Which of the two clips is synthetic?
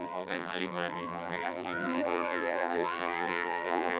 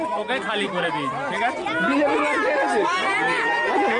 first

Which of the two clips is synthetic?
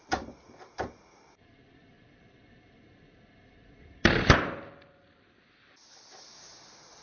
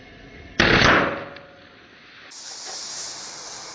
first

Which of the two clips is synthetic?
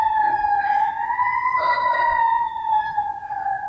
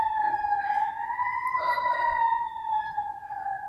second